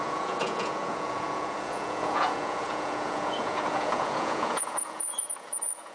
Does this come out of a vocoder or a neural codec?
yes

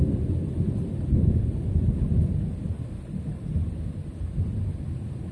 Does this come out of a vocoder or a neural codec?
no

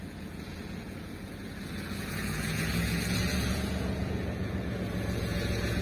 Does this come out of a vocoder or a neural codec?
yes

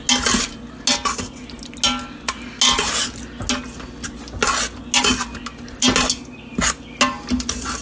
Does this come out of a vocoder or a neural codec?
no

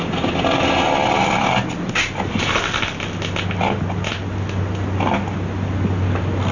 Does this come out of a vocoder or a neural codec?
no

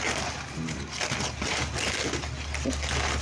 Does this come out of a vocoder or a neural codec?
no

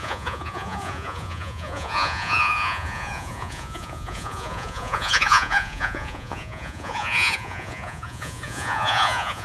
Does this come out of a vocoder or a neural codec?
yes